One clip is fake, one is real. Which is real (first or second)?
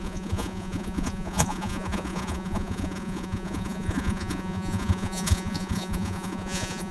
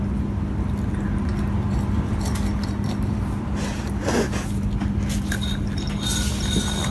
second